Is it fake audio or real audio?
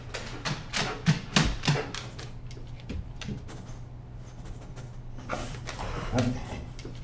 real